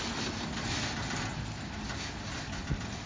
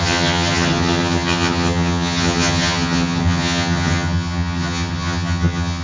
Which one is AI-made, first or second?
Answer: second